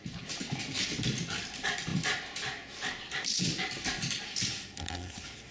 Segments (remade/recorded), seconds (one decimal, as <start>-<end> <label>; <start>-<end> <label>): 0.0-5.5 remade